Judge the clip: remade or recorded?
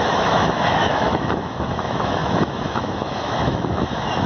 remade